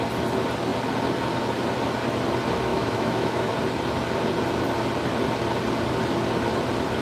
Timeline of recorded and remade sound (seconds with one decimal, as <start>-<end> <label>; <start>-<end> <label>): 0.0-2.7 recorded; 2.7-3.5 remade; 3.5-7.0 recorded